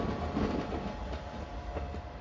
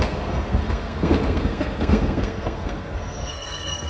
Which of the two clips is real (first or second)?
first